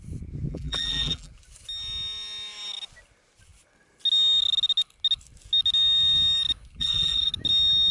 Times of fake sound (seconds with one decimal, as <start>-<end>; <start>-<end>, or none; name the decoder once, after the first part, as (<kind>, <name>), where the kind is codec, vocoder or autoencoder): 0.5-1.3 (vocoder, BigVGAN v2); 6.8-7.3